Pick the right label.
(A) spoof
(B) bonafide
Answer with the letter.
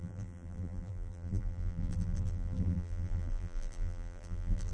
A